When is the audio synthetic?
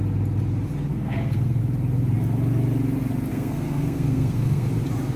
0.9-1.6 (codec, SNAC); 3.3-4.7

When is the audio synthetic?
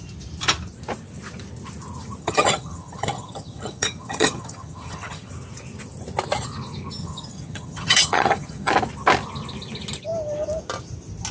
2.2-5.3 (vocoder, HiFi-GAN); 7.0-8.7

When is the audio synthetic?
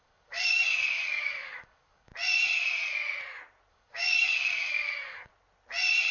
0.0-2.1 (codec, DAC); 3.7-5.3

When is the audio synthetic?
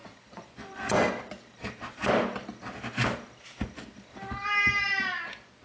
0.0-1.1 (vocoder, Vocos)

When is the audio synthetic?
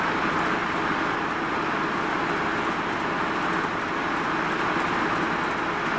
none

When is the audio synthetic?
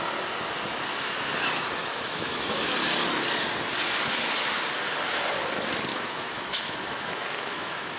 1.8-2.7 (autoencoder, DAC-VAE); 5.9-8.0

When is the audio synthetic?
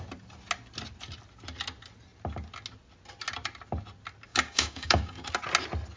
4.3-5.3 (codec, DAC)